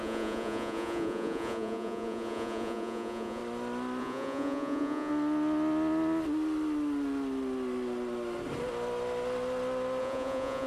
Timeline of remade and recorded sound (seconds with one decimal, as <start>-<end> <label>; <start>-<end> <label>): 0.0-3.4 remade; 3.4-4.0 recorded; 4.0-5.1 remade; 5.1-10.0 recorded; 10.0-10.7 remade